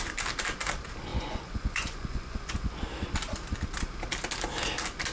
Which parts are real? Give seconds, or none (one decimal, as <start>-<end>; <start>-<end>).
0.0-1.1; 2.7-5.1